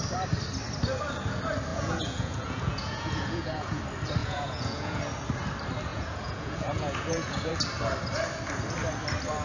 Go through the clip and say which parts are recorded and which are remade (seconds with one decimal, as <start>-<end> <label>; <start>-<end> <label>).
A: 0.0-1.7 recorded; 1.7-3.8 remade; 3.8-4.2 recorded; 4.2-5.0 remade; 5.0-5.9 recorded; 5.9-7.5 remade; 7.5-9.4 recorded